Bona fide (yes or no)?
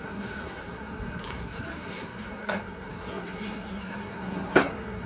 no